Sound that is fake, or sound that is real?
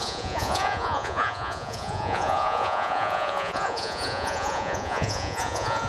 fake